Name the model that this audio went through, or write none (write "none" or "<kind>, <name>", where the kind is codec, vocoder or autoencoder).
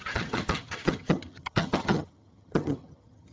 vocoder, HiFi-GAN